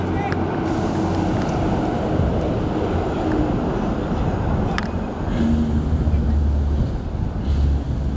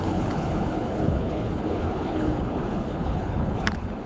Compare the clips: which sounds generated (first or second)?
second